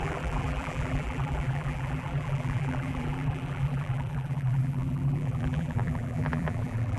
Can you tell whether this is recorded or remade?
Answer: remade